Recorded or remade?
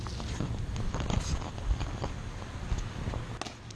recorded